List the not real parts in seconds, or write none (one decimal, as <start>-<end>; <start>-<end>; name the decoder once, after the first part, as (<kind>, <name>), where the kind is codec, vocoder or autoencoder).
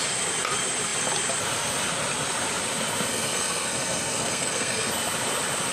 3.1-4.9 (codec, SNAC)